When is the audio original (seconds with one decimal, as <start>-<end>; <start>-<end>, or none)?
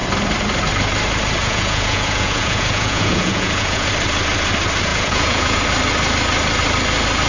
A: 0.0-1.4; 3.9-4.9; 5.6-7.3